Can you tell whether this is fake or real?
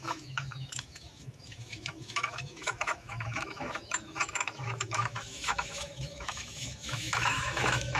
fake